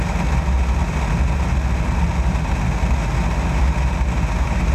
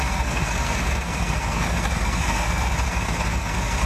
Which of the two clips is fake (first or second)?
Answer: second